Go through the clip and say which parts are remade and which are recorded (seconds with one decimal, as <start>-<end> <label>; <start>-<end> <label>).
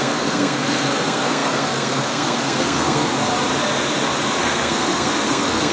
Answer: 0.0-3.3 remade; 3.3-4.4 recorded; 4.4-5.7 remade